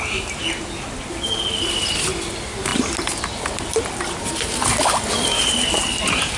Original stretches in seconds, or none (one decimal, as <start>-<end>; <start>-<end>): 0.0-6.4